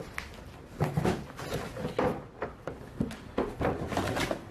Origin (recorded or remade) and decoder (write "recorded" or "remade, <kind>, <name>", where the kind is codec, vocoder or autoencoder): recorded